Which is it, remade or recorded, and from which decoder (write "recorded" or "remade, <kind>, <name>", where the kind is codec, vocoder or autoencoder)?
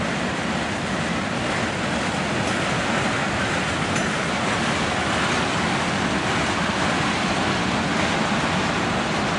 recorded